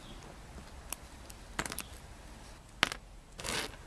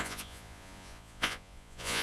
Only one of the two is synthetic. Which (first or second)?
second